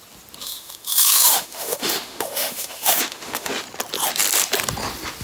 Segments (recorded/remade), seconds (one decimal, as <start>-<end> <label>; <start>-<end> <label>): 0.0-0.4 recorded; 0.4-3.5 remade; 3.5-5.2 recorded